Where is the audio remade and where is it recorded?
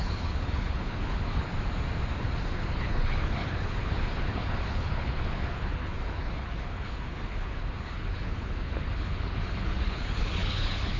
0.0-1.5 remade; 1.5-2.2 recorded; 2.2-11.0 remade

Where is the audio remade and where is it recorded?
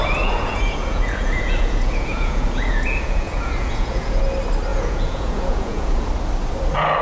0.0-4.2 remade; 4.2-4.7 recorded; 4.7-6.1 remade; 6.1-7.0 recorded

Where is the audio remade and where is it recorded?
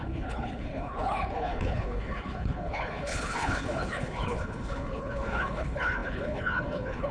0.0-7.1 remade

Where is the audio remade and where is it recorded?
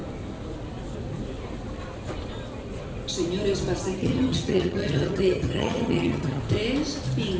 0.0-4.0 recorded; 4.0-6.4 remade; 6.4-7.4 recorded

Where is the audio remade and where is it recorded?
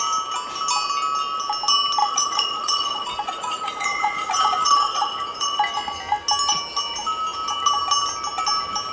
0.0-2.0 recorded; 2.0-5.6 remade; 5.6-8.9 recorded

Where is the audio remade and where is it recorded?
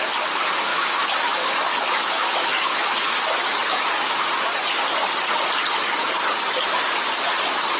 0.0-0.7 recorded; 0.7-4.1 remade; 4.1-7.8 recorded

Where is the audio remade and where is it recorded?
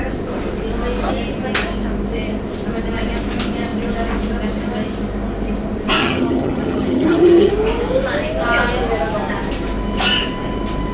0.0-6.0 recorded; 6.0-7.5 remade; 7.5-10.9 recorded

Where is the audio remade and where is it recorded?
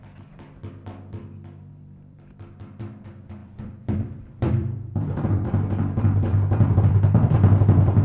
0.0-0.6 remade; 0.6-1.7 recorded; 1.7-8.0 remade